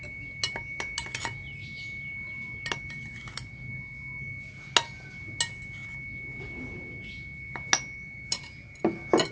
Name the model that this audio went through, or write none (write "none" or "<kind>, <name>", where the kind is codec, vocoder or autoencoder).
none